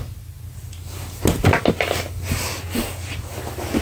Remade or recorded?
recorded